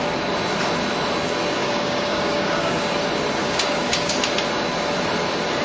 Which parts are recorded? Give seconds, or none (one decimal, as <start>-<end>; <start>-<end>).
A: 0.0-1.6; 2.9-3.4; 4.1-5.6